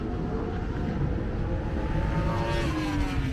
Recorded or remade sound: recorded